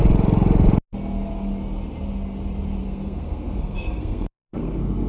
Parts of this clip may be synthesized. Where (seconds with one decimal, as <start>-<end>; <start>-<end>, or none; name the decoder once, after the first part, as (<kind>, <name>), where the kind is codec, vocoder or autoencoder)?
2.8-5.1 (codec, SNAC)